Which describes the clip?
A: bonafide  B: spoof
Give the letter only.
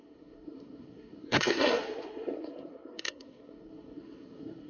B